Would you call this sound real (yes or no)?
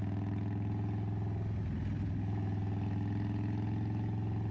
yes